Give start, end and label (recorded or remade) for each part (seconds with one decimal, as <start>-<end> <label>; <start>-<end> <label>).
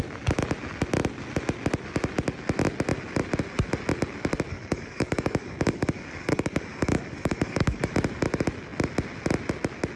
0.0-4.5 recorded; 4.5-7.9 remade; 7.9-10.0 recorded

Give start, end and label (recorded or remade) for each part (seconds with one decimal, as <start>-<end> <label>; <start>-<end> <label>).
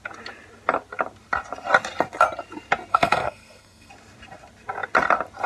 0.0-2.9 recorded; 2.9-3.9 remade; 3.9-5.5 recorded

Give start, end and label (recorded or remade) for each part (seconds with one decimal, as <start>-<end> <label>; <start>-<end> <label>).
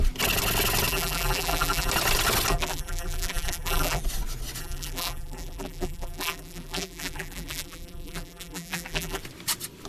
0.0-0.9 recorded; 0.9-1.9 remade; 1.9-2.5 recorded; 2.5-4.0 remade; 4.0-4.6 recorded; 4.6-9.2 remade; 9.2-9.9 recorded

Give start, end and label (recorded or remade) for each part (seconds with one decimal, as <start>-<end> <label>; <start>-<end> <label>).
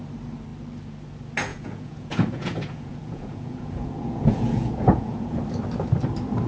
0.0-1.5 recorded; 1.5-5.4 remade; 5.4-6.5 recorded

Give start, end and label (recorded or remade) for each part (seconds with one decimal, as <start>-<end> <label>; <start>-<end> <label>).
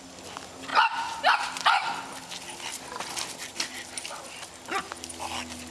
0.0-5.7 recorded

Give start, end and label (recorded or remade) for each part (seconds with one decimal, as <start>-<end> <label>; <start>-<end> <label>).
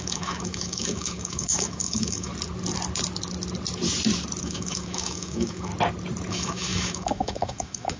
0.0-2.3 remade; 2.3-4.4 recorded; 4.4-5.7 remade; 5.7-6.3 recorded; 6.3-8.0 remade